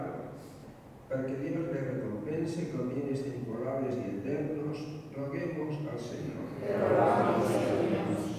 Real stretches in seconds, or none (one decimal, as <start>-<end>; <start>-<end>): 0.0-8.4